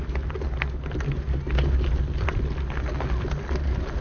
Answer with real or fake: real